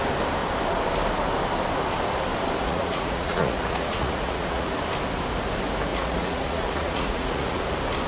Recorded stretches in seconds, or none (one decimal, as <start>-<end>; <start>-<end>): 0.0-2.6; 4.8-5.9; 7.6-8.1